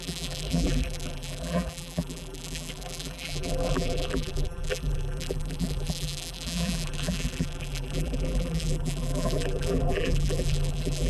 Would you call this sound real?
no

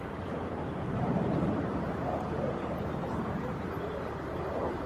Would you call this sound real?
no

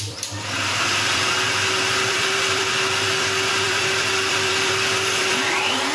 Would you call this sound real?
no